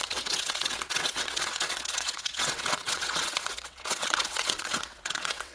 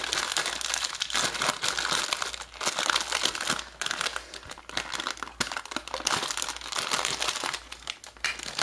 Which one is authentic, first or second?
second